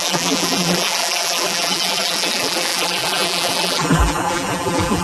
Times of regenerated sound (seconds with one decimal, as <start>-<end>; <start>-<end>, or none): 0.0-5.0